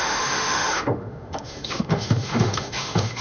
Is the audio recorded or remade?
remade